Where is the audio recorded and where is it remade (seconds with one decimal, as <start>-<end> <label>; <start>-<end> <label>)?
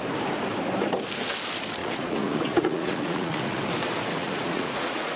0.0-1.8 recorded; 1.8-3.6 remade; 3.6-4.2 recorded; 4.2-5.2 remade